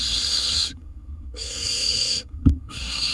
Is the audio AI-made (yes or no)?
yes